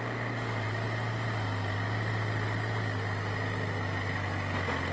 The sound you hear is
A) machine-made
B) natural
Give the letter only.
B